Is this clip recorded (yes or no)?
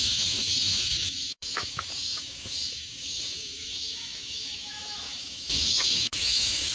no